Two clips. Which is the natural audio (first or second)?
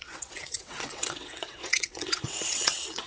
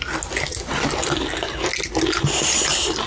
second